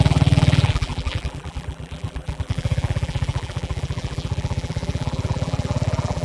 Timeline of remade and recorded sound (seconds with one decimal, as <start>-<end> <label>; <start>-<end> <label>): 0.0-6.2 remade